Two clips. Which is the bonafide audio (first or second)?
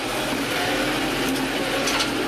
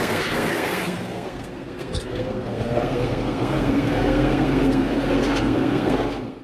first